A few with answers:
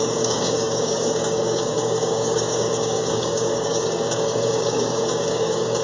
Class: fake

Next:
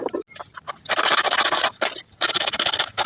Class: real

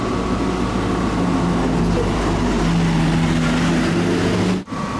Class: real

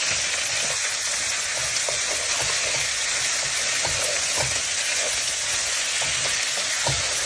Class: fake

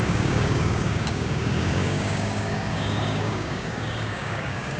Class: fake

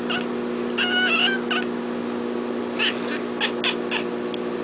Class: real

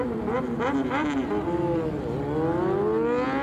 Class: real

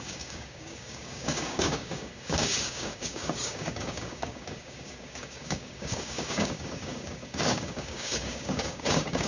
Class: fake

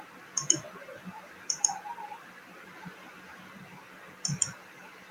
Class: fake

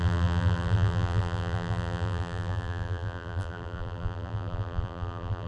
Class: fake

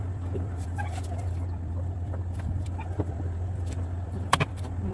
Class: fake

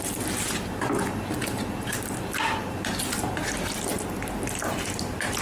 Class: real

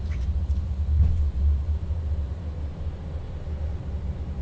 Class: real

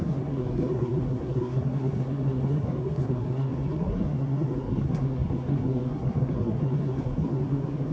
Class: fake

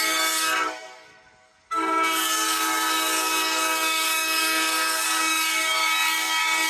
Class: fake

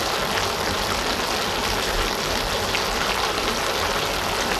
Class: real